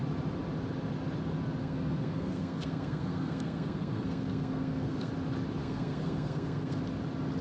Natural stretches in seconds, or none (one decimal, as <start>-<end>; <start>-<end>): 0.0-1.6; 5.1-5.6; 6.8-7.4